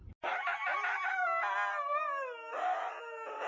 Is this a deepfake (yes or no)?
no